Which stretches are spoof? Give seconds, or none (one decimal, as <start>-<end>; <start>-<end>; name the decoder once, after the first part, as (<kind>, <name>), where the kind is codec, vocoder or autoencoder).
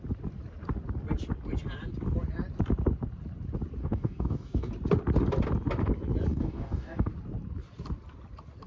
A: 3.8-4.7 (codec, DAC); 6.3-7.1